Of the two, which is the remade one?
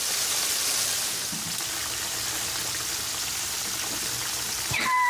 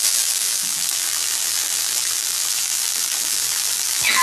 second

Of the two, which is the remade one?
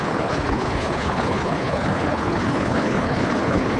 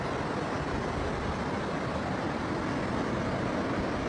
first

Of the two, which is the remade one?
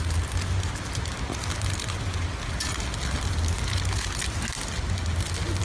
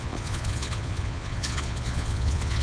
second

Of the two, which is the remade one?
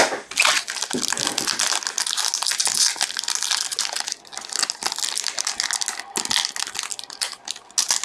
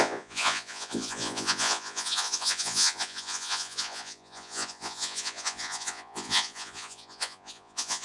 second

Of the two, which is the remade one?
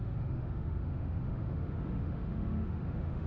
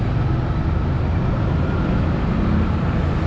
first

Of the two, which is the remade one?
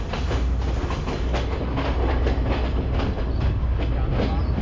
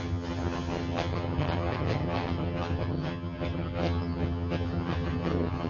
second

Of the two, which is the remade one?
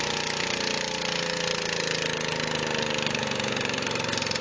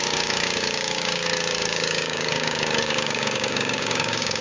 second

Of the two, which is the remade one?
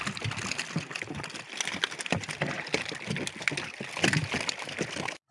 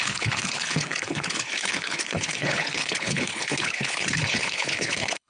second